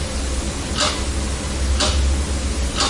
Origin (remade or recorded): recorded